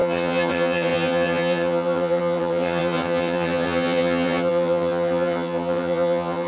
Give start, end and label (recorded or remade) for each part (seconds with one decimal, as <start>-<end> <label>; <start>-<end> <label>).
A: 0.0-6.5 remade